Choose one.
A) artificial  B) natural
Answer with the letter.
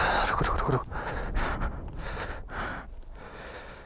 B